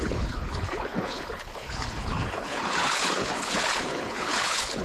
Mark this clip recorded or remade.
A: remade